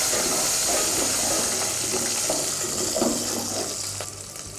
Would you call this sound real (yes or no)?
yes